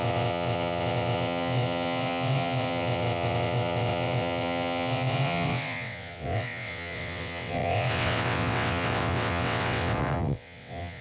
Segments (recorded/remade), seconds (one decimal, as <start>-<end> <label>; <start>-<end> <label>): 0.0-11.0 remade